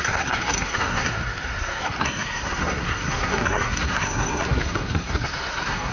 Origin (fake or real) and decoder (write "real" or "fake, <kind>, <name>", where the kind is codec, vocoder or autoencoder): fake, codec, SNAC